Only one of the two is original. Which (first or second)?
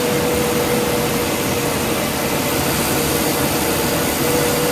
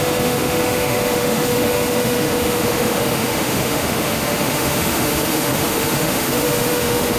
first